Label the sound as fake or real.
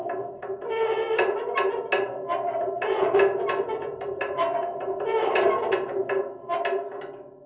real